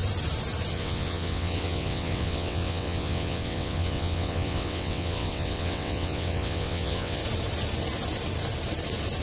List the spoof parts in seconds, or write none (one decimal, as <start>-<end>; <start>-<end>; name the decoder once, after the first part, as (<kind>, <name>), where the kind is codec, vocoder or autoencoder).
0.7-7.2 (vocoder, WaveNeXt)